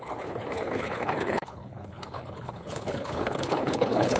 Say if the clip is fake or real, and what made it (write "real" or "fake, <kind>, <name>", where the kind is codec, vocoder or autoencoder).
fake, codec, HILCodec